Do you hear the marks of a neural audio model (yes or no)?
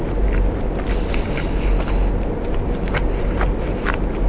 no